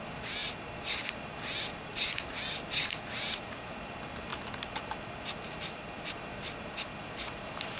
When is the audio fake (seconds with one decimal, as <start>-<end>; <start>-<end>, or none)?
none